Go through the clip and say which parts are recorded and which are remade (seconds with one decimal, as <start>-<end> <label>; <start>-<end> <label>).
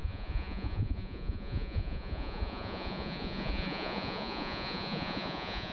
0.0-5.7 remade